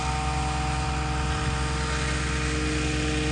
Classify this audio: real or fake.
real